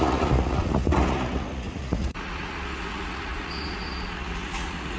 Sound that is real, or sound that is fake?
fake